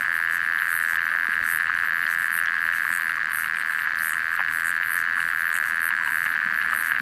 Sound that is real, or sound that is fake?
fake